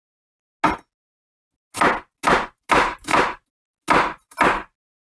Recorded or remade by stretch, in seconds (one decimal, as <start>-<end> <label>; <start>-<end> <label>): 0.0-5.1 recorded